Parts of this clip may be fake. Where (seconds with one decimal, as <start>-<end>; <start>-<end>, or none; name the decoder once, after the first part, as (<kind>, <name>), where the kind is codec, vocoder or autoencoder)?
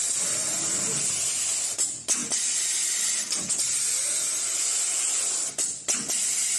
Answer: none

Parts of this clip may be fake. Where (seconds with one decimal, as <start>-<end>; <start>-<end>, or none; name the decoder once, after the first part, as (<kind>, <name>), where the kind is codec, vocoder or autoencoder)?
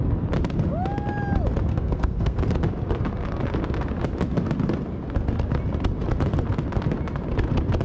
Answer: 1.7-2.4 (codec, SNAC)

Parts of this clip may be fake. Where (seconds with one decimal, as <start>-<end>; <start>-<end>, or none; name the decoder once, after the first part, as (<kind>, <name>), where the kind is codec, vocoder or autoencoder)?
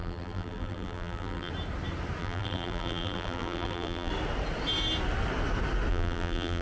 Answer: 0.0-1.5 (vocoder, BigVGAN v2); 2.2-4.1; 5.9-6.6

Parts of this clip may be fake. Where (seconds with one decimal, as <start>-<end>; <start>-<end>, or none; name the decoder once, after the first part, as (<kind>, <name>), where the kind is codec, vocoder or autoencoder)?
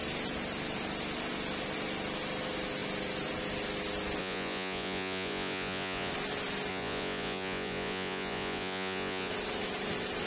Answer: 4.2-6.1 (vocoder, Vocos); 6.7-9.3